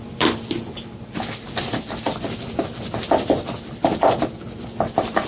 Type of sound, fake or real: real